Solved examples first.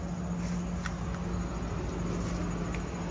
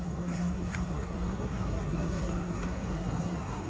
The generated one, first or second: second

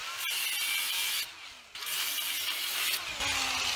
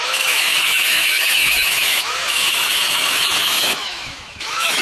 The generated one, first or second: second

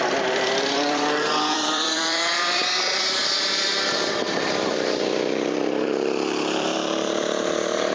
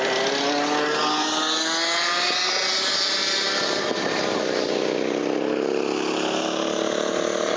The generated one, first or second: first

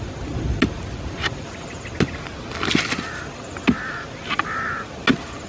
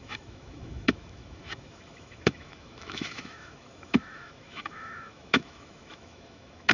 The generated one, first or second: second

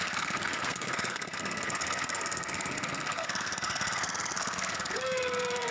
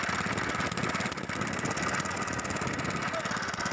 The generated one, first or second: first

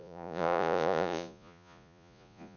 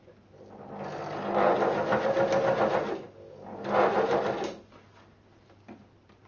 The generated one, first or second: first